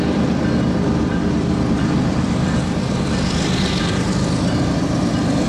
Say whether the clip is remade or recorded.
remade